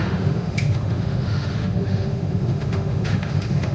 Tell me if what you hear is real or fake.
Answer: fake